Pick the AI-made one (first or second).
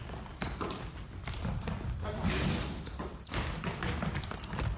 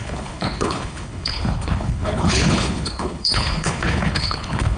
second